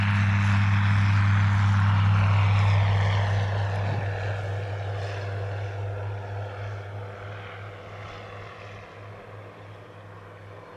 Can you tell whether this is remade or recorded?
recorded